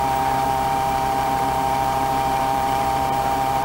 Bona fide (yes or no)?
no